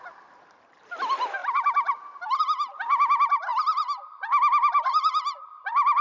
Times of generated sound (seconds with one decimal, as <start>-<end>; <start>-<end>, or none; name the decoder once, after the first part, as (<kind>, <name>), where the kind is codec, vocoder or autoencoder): 0.0-6.0 (vocoder, BigVGAN v2)